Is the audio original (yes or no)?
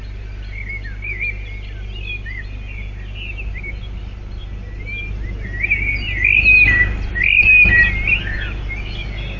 yes